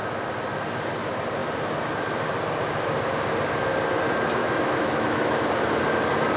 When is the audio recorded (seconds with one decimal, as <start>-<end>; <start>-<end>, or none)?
0.0-4.4; 5.4-6.4